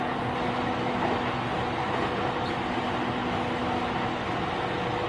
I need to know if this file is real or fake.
real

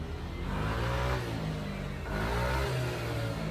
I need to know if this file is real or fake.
real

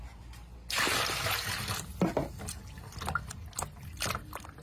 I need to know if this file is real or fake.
real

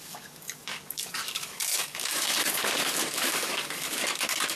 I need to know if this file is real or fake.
fake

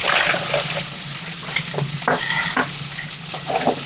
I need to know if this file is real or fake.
real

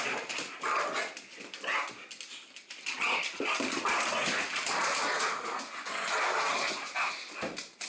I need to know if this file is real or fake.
real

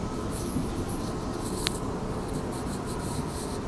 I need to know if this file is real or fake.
real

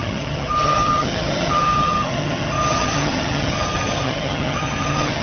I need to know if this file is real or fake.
fake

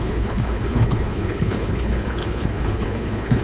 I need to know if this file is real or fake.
fake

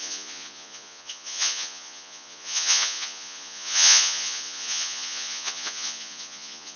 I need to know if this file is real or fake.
fake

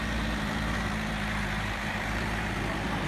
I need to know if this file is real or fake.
fake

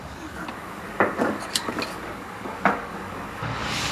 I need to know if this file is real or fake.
fake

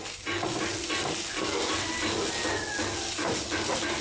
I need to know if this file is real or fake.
real